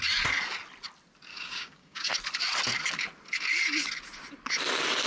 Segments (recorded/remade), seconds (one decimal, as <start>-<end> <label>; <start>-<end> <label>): 0.0-1.3 recorded; 1.3-2.1 remade; 2.1-5.1 recorded